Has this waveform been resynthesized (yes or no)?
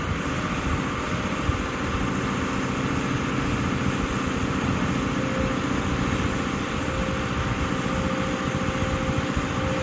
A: no